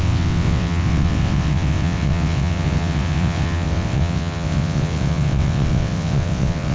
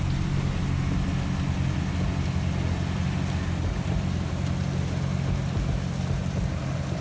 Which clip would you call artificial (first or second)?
first